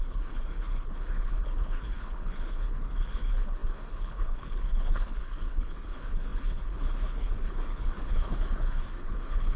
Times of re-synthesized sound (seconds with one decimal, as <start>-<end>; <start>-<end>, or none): 0.0-9.6